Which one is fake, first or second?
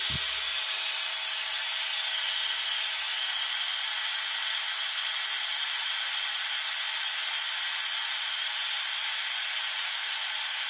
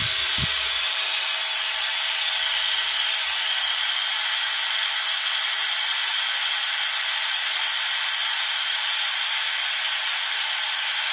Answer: second